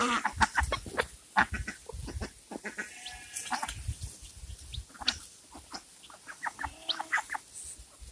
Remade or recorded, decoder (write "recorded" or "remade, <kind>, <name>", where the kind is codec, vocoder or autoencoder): recorded